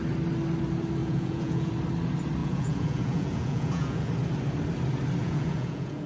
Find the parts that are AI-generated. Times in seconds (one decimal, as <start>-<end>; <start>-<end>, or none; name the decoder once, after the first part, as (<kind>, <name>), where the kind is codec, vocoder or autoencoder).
1.0-1.7 (vocoder, Vocos); 2.4-4.1; 5.2-6.1